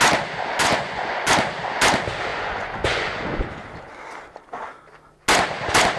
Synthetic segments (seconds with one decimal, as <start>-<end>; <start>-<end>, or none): 0.6-1.3; 2.3-3.5